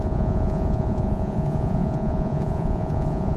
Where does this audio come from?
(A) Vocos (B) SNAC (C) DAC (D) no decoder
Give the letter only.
A